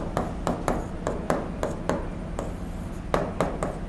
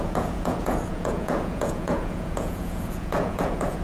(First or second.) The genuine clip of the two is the first